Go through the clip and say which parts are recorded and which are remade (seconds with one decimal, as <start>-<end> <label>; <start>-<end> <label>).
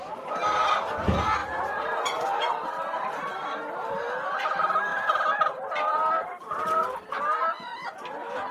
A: 0.0-1.4 remade; 1.4-2.4 recorded; 2.4-4.9 remade; 4.9-7.2 recorded; 7.2-7.7 remade; 7.7-8.5 recorded